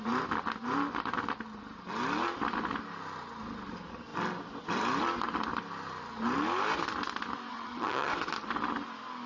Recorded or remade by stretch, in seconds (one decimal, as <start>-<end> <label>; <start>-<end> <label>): 0.0-7.5 recorded; 7.5-8.1 remade; 8.1-9.3 recorded

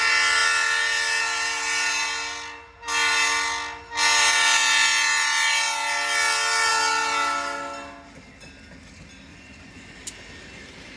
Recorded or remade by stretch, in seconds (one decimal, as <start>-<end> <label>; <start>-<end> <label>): 0.0-9.3 recorded; 9.3-10.0 remade; 10.0-11.0 recorded